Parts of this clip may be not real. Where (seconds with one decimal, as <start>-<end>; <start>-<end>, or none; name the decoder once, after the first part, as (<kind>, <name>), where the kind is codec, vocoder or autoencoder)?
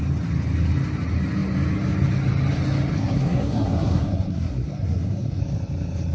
2.9-5.4 (codec, SNAC)